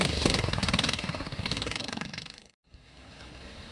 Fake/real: fake